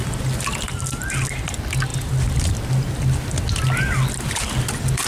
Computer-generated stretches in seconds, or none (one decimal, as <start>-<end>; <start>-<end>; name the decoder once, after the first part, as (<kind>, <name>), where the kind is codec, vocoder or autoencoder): none